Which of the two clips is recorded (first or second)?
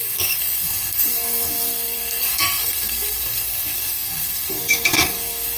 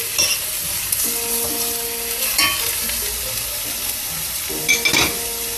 second